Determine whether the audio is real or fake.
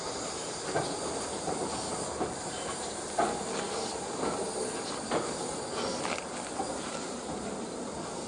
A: real